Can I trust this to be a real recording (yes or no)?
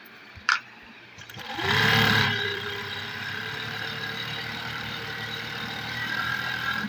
no